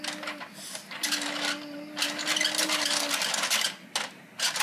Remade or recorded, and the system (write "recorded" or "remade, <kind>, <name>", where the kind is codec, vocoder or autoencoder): recorded